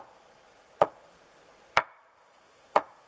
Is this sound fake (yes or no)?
yes